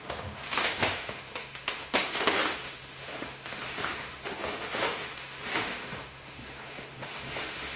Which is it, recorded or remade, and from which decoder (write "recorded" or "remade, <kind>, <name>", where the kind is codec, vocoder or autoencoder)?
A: remade, autoencoder, DAC-VAE